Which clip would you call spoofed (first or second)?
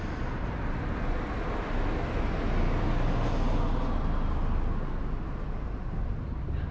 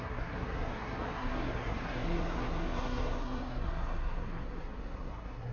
second